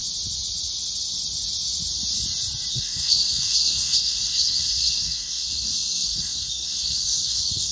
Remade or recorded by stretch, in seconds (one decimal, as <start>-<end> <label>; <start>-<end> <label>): 0.0-2.7 recorded; 2.7-7.7 remade